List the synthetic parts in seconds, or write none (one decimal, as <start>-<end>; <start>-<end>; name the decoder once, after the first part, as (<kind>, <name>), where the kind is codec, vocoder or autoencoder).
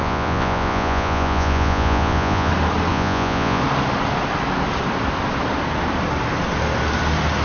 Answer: 0.0-2.5 (vocoder, Vocos); 2.9-3.6